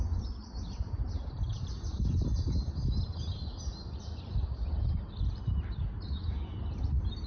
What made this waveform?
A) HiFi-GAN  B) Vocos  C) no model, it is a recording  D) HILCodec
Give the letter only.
C